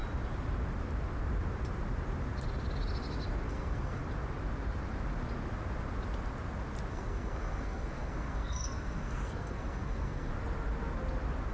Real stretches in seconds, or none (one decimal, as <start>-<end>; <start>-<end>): 0.0-3.5; 4.0-6.9; 10.3-11.5